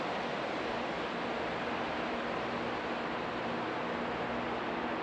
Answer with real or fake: real